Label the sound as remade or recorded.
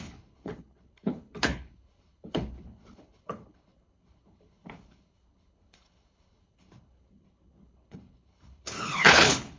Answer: remade